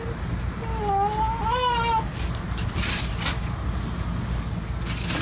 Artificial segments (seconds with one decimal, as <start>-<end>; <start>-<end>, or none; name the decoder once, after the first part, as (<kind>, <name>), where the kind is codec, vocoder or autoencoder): none